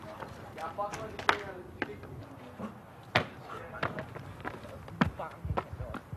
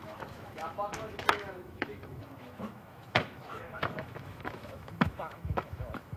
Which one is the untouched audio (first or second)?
first